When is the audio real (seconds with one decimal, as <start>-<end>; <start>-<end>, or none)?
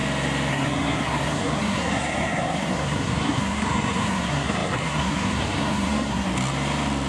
0.0-0.5; 6.3-7.1